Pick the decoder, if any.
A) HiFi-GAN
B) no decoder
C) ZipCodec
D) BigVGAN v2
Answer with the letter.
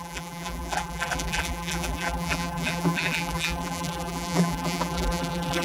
D